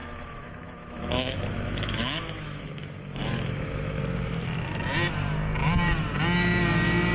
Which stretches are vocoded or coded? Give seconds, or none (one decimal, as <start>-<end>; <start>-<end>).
0.0-4.0